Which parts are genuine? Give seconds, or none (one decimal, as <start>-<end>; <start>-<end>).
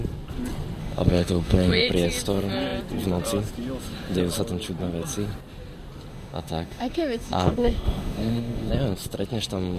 0.0-0.8; 1.9-6.1; 8.7-9.8